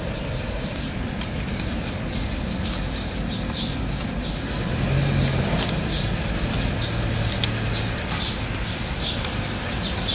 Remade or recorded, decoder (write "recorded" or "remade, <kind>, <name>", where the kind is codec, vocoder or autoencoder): recorded